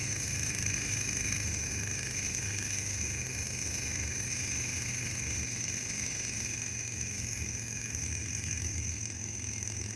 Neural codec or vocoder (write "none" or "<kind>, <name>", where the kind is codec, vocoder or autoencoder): autoencoder, DAC-VAE